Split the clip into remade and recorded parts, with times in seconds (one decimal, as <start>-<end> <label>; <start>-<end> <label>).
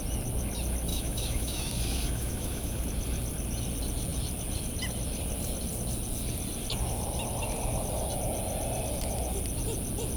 0.0-0.9 recorded; 0.9-2.8 remade; 2.8-10.2 recorded